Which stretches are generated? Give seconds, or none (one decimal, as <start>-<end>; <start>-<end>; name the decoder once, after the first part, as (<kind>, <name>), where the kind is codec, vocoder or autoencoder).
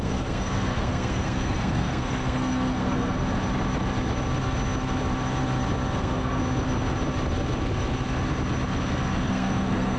0.0-3.2 (codec, SNAC); 6.0-6.4; 9.2-10.0